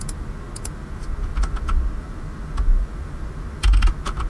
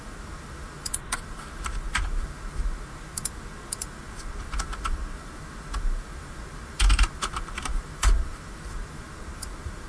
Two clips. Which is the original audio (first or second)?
first